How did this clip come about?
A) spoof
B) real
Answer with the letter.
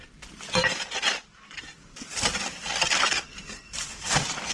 A